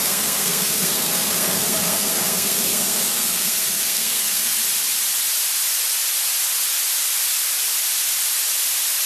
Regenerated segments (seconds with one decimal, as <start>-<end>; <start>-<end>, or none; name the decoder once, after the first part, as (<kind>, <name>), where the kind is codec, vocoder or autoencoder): 0.0-4.6 (codec, SNAC)